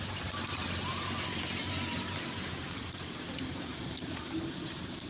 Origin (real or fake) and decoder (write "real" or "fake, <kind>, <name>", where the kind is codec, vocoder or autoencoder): fake, vocoder, BigVGAN v2